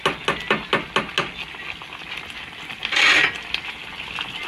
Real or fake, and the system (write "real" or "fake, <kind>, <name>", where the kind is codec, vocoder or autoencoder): real